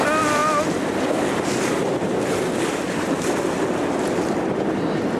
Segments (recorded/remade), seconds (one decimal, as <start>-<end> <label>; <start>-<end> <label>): 0.0-5.2 recorded